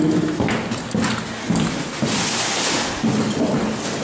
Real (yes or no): yes